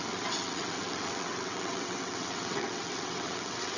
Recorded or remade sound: remade